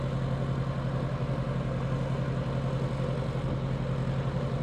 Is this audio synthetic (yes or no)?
no